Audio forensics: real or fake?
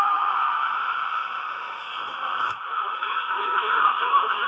fake